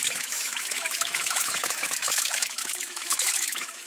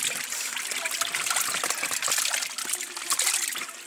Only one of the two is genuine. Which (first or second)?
second